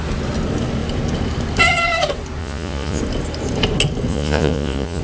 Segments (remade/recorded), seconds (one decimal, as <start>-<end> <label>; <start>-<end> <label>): 0.0-2.4 recorded; 2.4-3.0 remade; 3.0-4.1 recorded; 4.1-5.0 remade